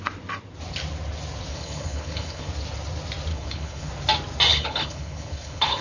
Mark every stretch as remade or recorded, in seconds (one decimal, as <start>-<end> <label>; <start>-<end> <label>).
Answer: 0.0-1.5 recorded; 1.5-2.5 remade; 2.5-3.3 recorded; 3.3-3.9 remade; 3.9-4.5 recorded; 4.5-5.8 remade